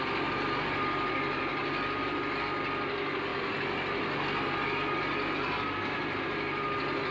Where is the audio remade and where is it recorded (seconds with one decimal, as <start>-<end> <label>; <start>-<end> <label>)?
0.0-7.1 recorded